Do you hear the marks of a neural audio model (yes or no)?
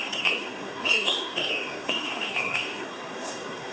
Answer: yes